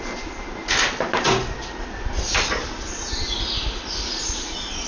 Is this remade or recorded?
recorded